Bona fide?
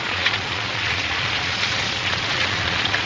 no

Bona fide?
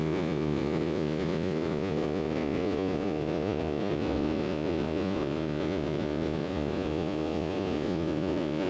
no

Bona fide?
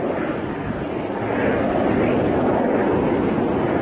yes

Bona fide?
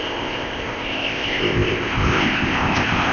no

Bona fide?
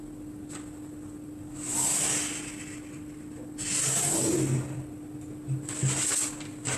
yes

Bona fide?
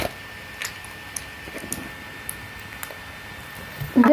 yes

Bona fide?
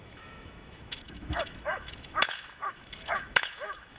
no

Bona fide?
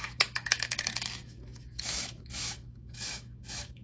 no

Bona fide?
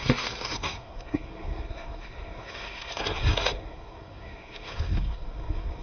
no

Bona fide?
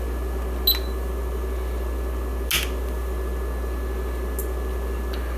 yes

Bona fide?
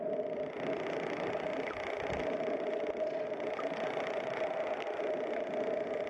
yes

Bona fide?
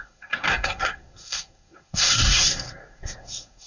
no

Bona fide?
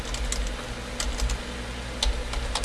yes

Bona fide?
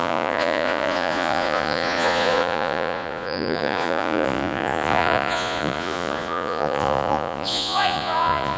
no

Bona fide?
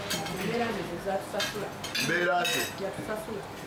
yes